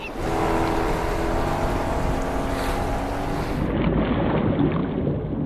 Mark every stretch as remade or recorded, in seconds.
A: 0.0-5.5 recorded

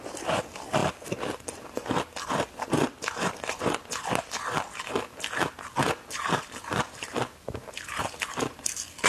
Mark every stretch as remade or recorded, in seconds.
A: 0.0-9.1 recorded

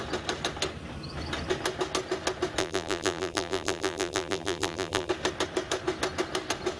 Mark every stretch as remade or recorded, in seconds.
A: 0.0-2.6 recorded; 2.6-5.1 remade; 5.1-6.8 recorded

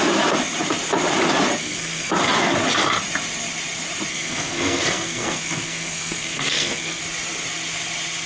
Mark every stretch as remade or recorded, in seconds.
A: 0.0-1.6 recorded; 1.6-2.1 remade; 2.1-4.1 recorded; 4.1-7.0 remade; 7.0-8.3 recorded

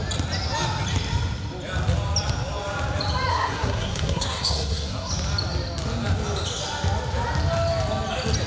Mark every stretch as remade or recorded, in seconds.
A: 0.0-3.3 recorded; 3.3-5.1 remade; 5.1-8.5 recorded

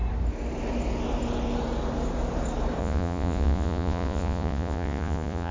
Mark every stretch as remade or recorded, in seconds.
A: 0.0-2.8 recorded; 2.8-5.5 remade